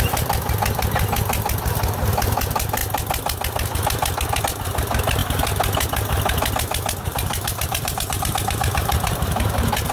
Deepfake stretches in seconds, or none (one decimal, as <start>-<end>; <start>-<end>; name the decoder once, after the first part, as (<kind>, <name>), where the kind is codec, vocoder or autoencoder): 7.1-9.9 (vocoder, BigVGAN v2)